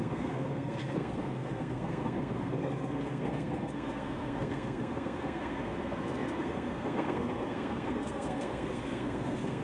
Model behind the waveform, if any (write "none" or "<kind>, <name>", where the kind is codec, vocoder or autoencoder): codec, SNAC